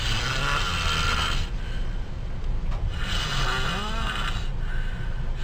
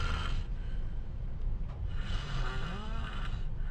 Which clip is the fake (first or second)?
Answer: second